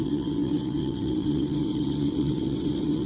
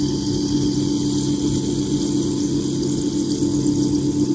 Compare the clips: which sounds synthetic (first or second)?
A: first